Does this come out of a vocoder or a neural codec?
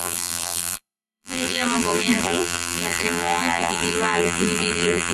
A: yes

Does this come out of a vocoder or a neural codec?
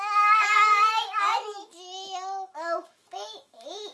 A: yes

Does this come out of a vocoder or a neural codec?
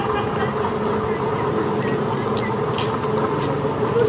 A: no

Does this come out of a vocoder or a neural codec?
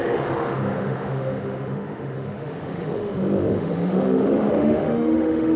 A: yes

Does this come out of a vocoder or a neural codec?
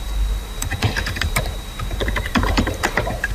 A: yes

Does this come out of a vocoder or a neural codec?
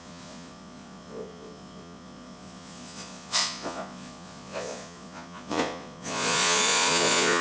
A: yes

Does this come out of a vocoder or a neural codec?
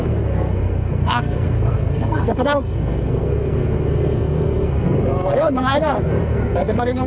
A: yes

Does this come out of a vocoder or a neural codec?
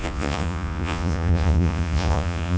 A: yes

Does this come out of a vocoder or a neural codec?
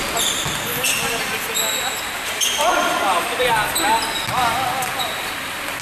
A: no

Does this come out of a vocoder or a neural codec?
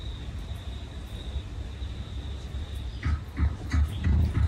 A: no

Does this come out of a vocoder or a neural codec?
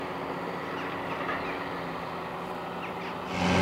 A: no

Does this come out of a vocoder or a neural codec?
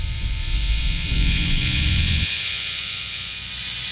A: yes